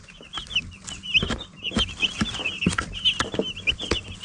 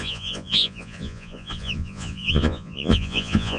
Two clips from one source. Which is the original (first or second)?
first